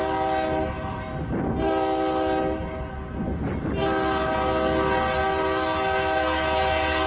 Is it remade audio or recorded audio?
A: recorded